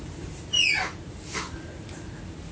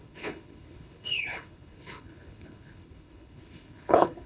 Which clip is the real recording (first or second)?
first